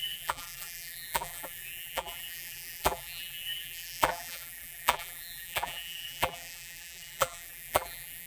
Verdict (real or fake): fake